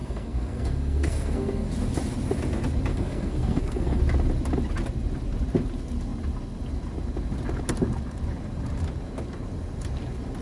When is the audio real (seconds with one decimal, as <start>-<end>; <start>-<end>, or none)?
1.7-2.9; 4.0-10.4